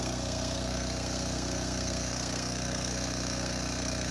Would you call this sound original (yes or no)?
no